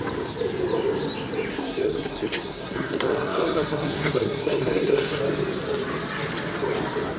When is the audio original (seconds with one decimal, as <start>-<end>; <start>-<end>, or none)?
0.0-1.5; 5.2-7.2